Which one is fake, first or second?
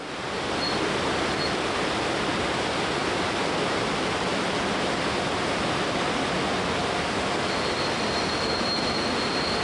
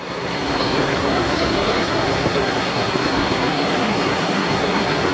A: second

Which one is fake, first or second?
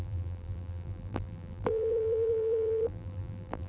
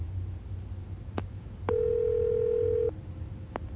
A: first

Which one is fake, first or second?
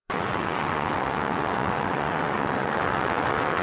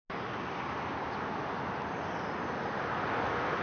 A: first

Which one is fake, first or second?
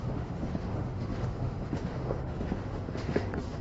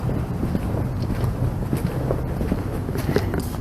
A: first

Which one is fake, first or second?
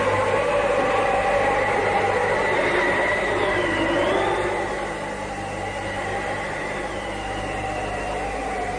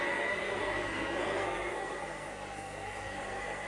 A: second